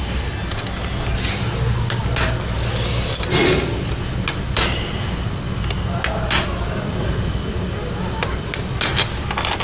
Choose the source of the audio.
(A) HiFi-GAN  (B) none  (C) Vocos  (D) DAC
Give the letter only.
B